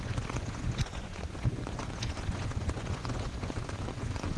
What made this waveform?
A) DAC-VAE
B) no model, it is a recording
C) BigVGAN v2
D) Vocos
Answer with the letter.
D